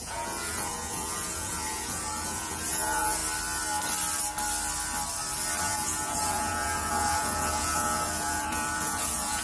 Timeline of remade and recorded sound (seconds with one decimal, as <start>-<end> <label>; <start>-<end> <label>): 0.0-3.2 remade; 3.2-5.6 recorded; 5.6-9.4 remade